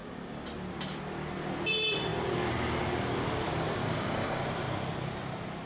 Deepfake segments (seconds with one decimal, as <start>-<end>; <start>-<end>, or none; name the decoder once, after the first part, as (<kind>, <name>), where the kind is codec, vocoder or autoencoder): 3.8-4.4 (codec, DAC)